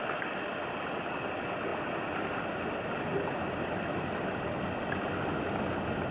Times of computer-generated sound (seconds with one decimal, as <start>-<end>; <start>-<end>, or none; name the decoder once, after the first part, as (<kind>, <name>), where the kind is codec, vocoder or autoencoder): none